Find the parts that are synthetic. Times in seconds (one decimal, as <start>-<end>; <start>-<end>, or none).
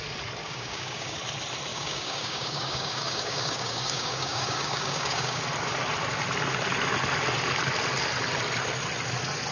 0.4-1.2; 1.7-5.4